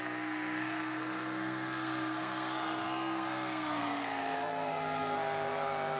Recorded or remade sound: remade